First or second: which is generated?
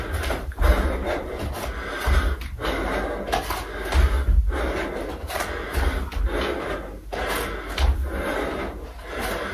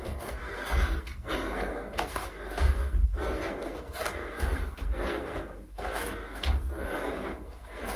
second